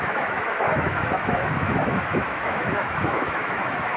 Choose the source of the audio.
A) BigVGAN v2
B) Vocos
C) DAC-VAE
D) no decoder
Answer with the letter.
C